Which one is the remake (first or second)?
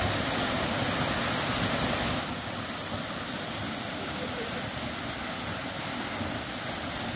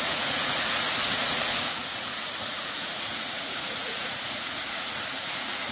second